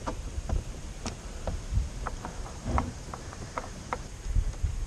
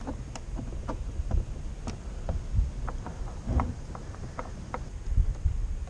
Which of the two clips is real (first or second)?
second